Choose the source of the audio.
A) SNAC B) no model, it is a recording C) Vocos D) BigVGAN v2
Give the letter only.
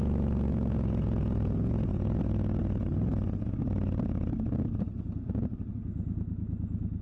B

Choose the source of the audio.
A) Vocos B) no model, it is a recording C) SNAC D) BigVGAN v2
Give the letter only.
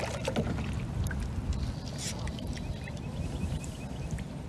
B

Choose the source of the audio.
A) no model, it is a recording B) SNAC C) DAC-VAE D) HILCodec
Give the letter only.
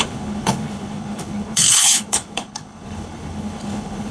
D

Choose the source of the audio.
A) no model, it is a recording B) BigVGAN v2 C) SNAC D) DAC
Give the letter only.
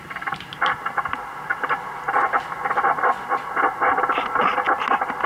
B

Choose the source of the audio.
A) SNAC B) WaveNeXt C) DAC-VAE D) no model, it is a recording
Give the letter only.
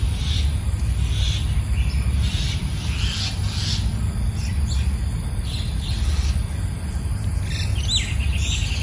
D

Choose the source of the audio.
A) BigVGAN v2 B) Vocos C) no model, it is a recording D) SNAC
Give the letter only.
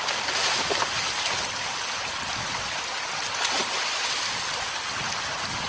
C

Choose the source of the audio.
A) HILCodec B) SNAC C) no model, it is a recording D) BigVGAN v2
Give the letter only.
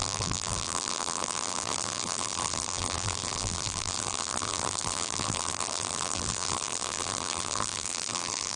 D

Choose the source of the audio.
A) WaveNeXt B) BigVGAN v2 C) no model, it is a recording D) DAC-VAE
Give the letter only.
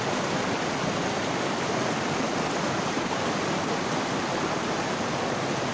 C